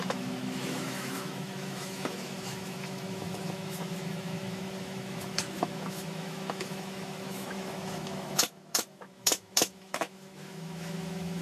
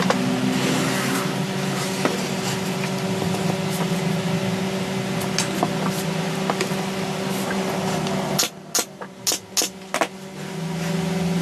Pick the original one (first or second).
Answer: second